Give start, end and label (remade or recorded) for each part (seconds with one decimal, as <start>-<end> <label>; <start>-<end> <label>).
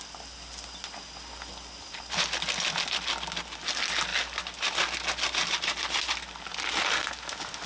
0.0-7.7 recorded